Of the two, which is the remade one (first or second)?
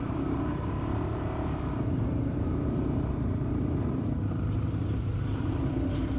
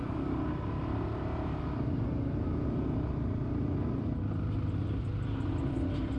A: first